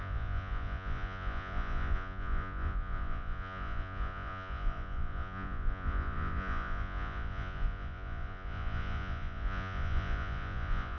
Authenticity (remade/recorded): remade